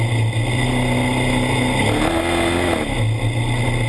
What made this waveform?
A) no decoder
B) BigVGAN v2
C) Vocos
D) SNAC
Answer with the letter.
A